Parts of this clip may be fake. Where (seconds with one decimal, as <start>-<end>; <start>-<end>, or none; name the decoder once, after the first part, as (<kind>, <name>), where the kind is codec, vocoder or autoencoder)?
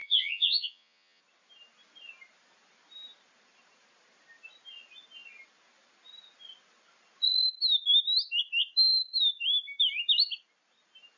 0.0-1.2 (vocoder, Vocos)